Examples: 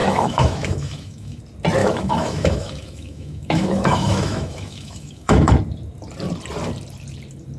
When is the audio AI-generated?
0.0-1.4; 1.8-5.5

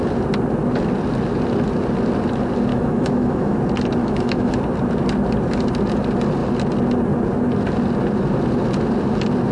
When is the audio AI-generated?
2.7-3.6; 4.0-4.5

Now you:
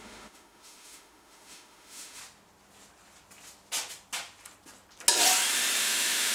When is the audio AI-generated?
0.0-2.2; 5.8-6.3

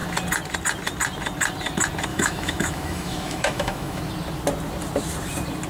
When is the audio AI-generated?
2.1-4.0

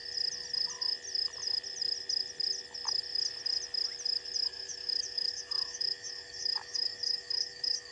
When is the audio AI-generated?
4.5-7.9

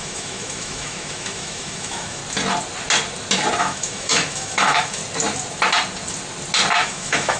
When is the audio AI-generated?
0.0-2.2; 3.6-5.0; 6.7-7.4

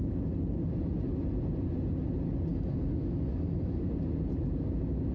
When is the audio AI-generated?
2.5-3.8

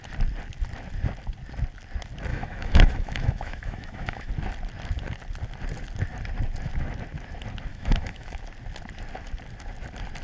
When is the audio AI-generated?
2.3-4.3; 7.7-8.4